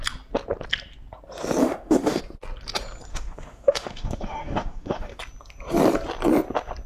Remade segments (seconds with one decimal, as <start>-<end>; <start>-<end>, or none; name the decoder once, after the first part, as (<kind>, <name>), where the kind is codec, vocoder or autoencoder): 1.6-2.2 (autoencoder, DAC-VAE); 3.1-5.2